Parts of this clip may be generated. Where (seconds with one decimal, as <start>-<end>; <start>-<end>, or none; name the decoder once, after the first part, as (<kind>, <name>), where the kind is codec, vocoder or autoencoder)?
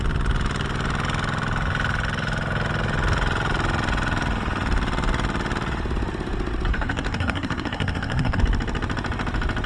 6.7-8.4 (codec, SNAC)